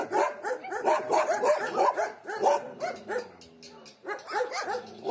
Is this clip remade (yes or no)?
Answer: no